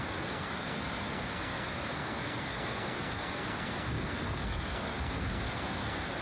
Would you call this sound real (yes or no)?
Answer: no